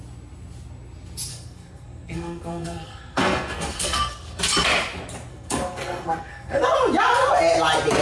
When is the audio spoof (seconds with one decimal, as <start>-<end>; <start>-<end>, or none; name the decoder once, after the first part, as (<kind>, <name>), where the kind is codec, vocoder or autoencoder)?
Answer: 1.3-4.4 (codec, SNAC); 5.3-6.6